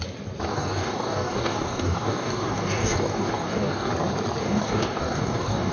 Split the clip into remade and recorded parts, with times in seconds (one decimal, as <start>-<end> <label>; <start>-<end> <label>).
0.0-0.5 recorded; 0.5-3.9 remade; 3.9-4.4 recorded; 4.4-5.7 remade